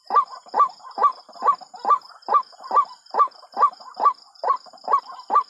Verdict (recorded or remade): remade